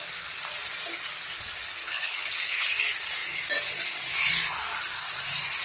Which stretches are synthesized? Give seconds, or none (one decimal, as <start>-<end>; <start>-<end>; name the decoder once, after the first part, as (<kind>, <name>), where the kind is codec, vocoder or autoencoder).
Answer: 1.8-2.7 (codec, HILCodec)